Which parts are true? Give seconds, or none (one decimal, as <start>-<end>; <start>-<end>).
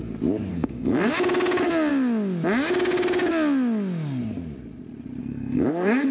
0.0-0.5; 1.1-5.2